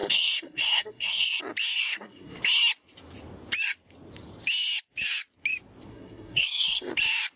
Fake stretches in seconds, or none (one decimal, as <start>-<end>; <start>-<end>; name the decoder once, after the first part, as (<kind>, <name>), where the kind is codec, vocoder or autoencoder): 0.0-1.4 (codec, SNAC); 1.8-2.4; 5.9-6.9